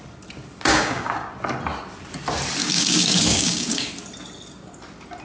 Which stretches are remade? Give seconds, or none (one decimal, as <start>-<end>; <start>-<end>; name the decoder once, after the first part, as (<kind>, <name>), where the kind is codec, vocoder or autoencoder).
0.7-1.3 (codec, DAC); 2.6-3.9